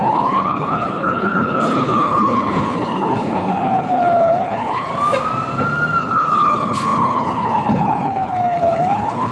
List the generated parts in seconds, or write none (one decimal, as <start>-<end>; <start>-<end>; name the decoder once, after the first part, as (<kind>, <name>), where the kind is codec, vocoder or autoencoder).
0.0-4.9 (codec, HILCodec); 6.0-9.3